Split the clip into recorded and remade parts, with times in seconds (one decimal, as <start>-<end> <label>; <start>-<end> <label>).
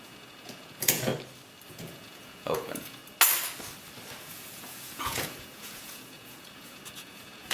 0.0-1.1 remade; 1.1-1.7 recorded; 1.7-3.0 remade; 3.0-4.2 recorded; 4.2-7.5 remade